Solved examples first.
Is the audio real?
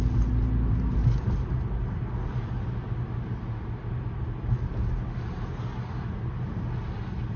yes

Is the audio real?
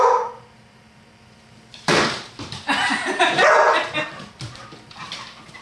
no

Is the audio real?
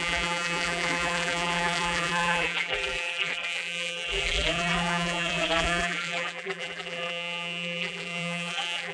no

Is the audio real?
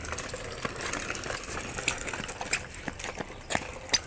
no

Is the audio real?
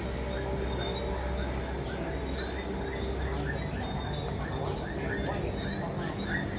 yes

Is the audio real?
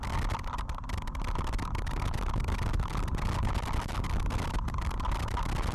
yes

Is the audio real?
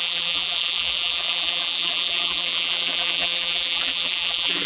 no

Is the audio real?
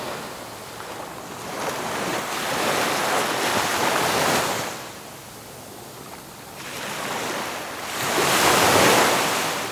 yes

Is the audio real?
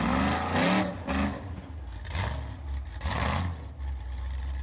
yes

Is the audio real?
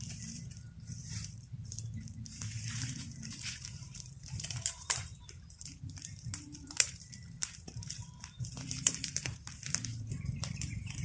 no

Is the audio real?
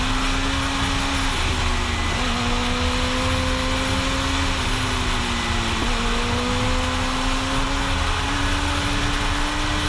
yes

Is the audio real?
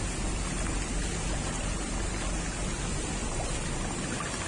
yes